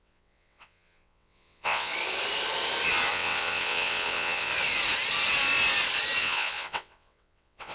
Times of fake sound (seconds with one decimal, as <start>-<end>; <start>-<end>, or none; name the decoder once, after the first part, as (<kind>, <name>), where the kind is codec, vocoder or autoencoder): 0.0-1.9 (vocoder, WaveNeXt); 3.1-4.5; 6.2-7.7